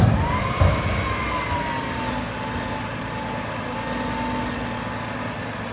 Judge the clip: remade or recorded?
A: recorded